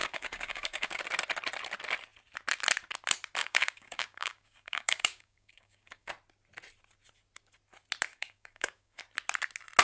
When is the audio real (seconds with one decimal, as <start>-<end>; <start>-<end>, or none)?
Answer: 1.0-3.4; 6.1-8.1; 9.0-9.8